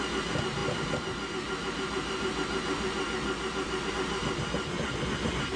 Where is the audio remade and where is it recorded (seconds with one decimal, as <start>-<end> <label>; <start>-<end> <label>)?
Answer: 0.0-5.6 recorded